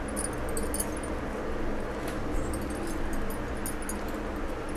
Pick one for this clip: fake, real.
real